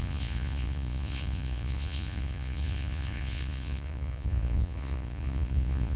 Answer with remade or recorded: remade